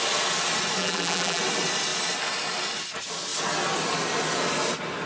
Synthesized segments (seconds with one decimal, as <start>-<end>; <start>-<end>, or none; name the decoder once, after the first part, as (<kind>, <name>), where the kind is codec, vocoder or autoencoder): 0.8-1.4 (vocoder, BigVGAN v2)